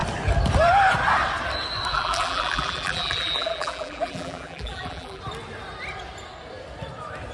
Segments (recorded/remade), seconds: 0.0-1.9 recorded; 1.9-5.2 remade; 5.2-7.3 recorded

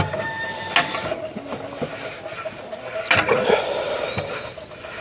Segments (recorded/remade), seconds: 0.0-1.9 recorded; 1.9-3.0 remade; 3.0-5.0 recorded